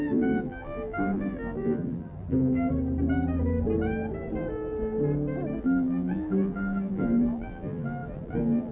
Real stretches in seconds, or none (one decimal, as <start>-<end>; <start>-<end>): 2.7-5.6